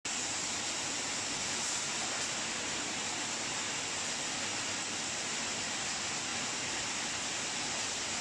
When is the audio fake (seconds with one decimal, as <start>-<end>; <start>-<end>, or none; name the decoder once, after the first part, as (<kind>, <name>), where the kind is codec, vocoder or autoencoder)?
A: none